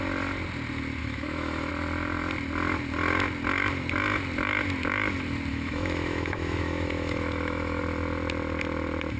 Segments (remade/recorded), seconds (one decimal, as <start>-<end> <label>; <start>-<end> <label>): 0.0-1.0 recorded; 1.0-1.7 remade; 1.7-5.5 recorded; 5.5-7.8 remade; 7.8-9.2 recorded